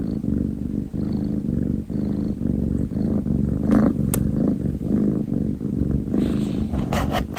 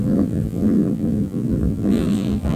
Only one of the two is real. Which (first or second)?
first